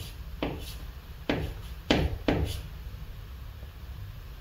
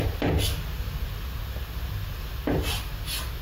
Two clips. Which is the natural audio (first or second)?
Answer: second